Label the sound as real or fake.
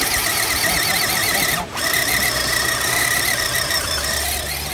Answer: fake